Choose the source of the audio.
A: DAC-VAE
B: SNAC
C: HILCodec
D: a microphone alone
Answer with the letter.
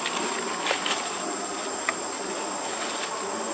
D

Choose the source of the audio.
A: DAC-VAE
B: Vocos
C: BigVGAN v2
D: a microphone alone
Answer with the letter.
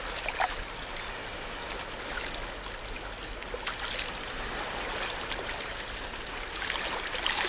D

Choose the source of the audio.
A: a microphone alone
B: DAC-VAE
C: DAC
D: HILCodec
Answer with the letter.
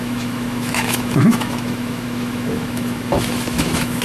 B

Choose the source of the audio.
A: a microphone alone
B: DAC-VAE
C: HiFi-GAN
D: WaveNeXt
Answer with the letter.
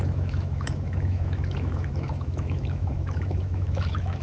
B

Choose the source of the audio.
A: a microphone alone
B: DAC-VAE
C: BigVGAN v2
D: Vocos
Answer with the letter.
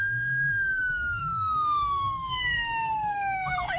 B